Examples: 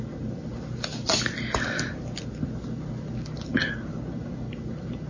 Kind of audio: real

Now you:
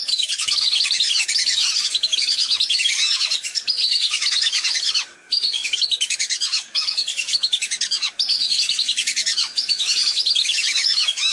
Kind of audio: fake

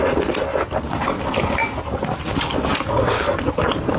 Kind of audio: real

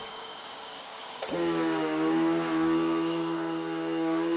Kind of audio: fake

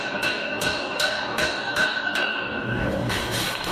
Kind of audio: fake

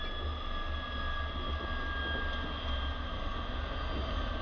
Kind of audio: real